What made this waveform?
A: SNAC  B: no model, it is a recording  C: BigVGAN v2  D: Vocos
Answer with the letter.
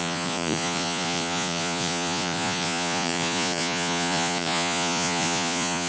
D